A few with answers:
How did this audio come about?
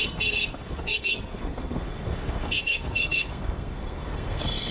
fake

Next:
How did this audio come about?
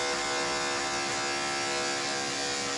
real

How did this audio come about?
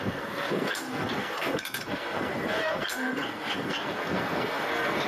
fake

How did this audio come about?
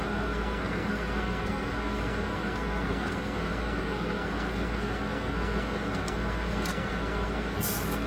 fake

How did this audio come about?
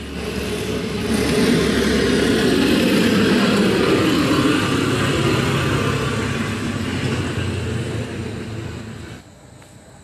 real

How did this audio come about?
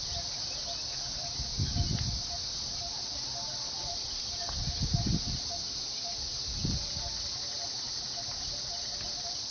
real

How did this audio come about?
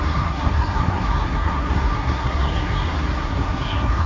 fake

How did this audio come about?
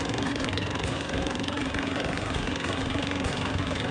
fake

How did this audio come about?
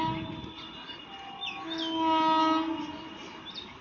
real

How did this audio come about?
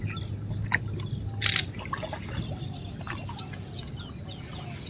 real